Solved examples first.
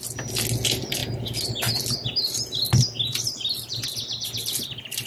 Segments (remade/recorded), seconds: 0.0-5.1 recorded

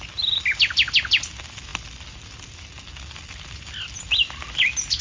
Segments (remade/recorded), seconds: 0.0-5.0 recorded

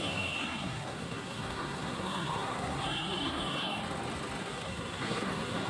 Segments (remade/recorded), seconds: 0.0-3.8 remade; 3.8-4.4 recorded; 4.4-5.7 remade

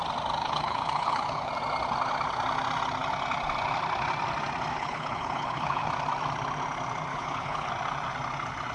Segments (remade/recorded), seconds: 0.0-0.4 recorded; 0.4-1.5 remade; 1.5-4.7 recorded; 4.7-5.9 remade; 5.9-7.1 recorded; 7.1-7.7 remade; 7.7-8.7 recorded